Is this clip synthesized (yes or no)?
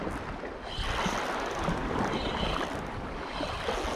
no